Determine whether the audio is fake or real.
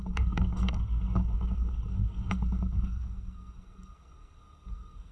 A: fake